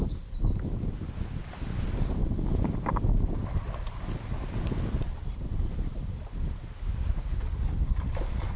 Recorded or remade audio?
recorded